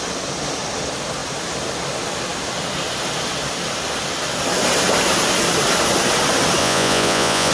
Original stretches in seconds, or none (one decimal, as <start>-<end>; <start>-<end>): 0.0-6.6